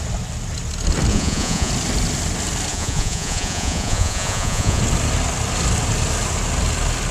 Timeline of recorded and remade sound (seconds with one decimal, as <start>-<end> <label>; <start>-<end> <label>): 0.0-1.1 recorded; 1.1-1.7 remade; 1.7-2.7 recorded; 2.7-4.8 remade; 4.8-7.1 recorded